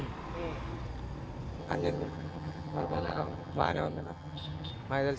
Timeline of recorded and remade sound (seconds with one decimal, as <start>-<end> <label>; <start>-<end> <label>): 0.0-1.6 recorded; 1.6-4.7 remade; 4.7-5.2 recorded

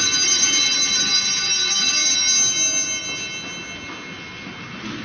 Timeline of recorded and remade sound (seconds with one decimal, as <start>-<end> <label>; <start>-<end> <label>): 0.0-5.0 recorded

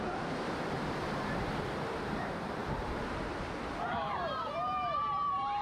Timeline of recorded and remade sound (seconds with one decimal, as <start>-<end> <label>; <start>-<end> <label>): 0.0-1.4 remade; 1.4-2.0 recorded; 2.0-5.6 remade